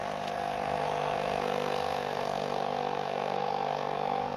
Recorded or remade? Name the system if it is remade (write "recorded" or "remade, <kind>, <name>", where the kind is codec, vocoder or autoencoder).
remade, codec, SNAC